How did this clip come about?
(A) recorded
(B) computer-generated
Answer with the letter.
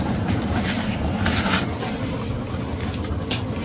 A